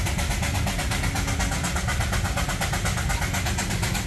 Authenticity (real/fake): real